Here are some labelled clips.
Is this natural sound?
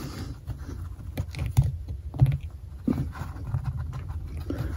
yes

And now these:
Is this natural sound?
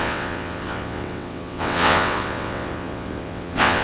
no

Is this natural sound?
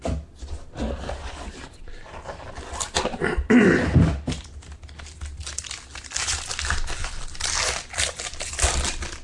yes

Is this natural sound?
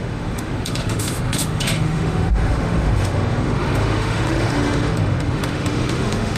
no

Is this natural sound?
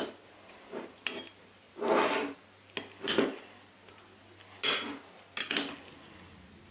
yes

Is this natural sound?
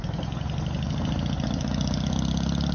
yes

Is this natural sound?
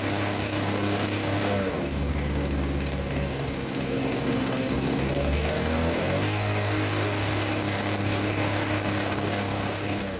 no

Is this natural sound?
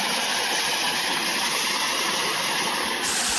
yes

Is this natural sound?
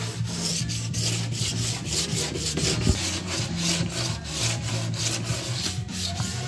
yes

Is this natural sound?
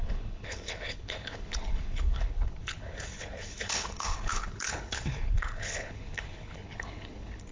no